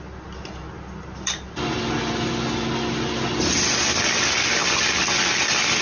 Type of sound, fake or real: real